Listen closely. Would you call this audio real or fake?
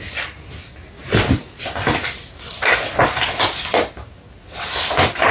real